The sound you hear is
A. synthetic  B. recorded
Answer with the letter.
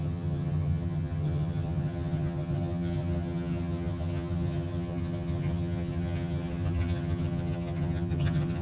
A